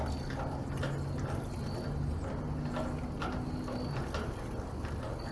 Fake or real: real